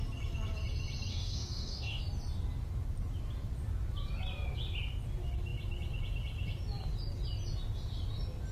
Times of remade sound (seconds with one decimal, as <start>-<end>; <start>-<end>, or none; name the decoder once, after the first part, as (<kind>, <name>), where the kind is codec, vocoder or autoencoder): 1.1-2.0 (codec, DAC)